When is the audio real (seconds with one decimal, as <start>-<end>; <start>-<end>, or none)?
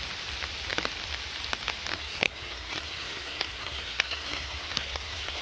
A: 0.0-1.9